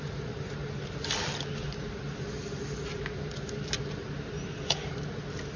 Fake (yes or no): no